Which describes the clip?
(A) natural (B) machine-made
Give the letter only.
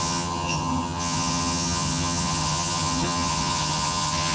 B